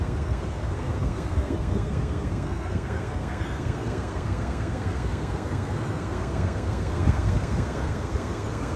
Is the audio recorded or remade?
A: remade